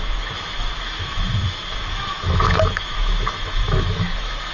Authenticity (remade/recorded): remade